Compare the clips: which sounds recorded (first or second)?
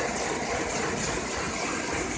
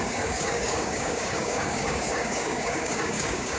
first